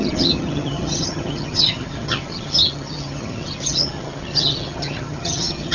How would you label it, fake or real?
fake